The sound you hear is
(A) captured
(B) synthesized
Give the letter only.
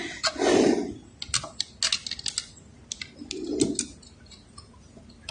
A